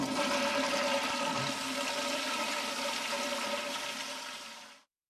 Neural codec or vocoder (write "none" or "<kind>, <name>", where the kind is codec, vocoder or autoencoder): vocoder, BigVGAN v2